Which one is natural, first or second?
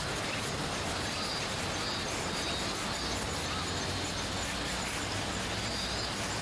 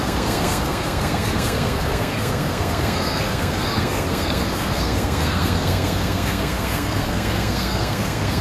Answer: first